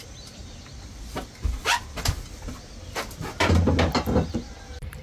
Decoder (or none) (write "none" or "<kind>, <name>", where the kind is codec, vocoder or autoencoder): none